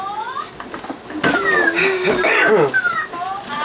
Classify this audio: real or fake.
real